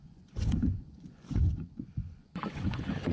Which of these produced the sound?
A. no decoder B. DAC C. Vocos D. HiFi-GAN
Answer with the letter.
C